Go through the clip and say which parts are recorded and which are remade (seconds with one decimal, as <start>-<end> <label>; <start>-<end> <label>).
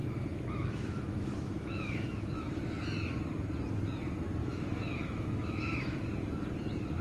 0.0-2.6 remade; 2.6-4.4 recorded; 4.4-6.0 remade; 6.0-7.0 recorded